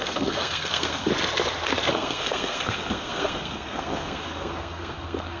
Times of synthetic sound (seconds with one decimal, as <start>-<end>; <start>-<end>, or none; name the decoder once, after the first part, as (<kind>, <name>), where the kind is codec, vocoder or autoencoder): 0.0-1.1 (codec, SNAC); 1.9-5.4